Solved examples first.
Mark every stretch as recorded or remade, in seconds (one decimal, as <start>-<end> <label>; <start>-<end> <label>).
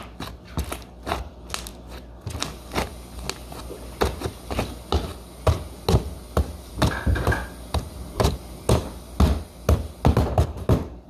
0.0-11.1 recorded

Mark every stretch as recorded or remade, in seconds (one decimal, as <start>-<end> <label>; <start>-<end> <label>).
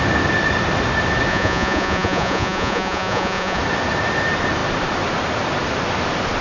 0.0-1.3 recorded; 1.3-3.6 remade; 3.6-6.4 recorded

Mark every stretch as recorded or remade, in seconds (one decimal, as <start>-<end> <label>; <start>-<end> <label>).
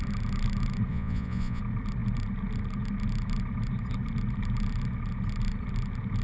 0.0-0.9 recorded; 0.9-1.6 remade; 1.6-6.2 recorded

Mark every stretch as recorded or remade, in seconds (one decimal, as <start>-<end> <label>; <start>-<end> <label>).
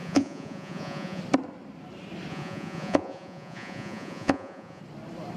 0.0-1.2 remade; 1.2-2.3 recorded; 2.3-4.8 remade; 4.8-5.4 recorded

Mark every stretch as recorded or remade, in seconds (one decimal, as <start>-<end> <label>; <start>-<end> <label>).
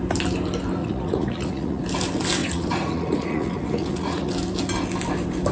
0.0-0.8 recorded; 0.8-1.8 remade; 1.8-2.4 recorded; 2.4-4.3 remade; 4.3-5.5 recorded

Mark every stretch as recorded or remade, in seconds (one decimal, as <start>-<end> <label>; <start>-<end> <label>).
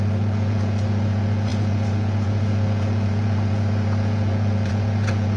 0.0-5.4 remade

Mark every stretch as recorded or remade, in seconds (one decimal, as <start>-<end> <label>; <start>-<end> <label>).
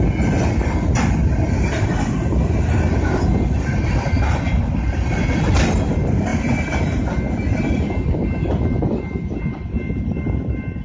0.0-10.8 recorded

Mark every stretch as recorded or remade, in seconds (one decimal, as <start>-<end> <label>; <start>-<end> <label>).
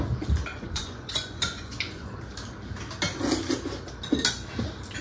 0.0-0.5 recorded; 0.5-2.1 remade; 2.1-5.0 recorded